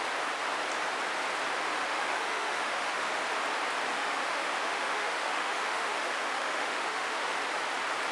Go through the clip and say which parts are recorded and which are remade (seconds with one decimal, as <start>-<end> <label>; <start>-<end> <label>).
0.0-1.7 recorded; 1.7-3.2 remade; 3.2-3.9 recorded; 3.9-7.4 remade; 7.4-8.1 recorded

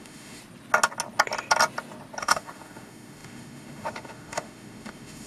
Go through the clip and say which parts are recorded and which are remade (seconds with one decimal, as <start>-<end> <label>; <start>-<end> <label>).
0.0-0.4 remade; 0.4-2.2 recorded; 2.2-5.3 remade

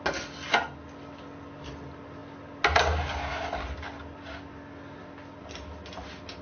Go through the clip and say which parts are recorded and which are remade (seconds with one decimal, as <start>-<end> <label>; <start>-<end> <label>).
0.0-6.4 recorded